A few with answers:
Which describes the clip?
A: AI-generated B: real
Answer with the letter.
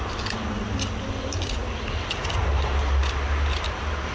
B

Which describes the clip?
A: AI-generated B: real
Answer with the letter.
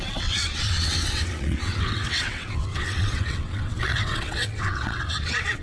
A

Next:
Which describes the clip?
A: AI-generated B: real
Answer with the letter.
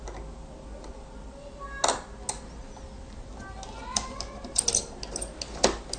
B